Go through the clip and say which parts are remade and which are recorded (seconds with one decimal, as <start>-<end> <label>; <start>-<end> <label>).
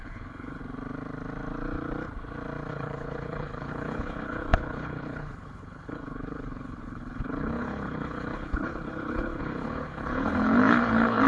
0.0-0.6 remade; 0.6-2.7 recorded; 2.7-11.3 remade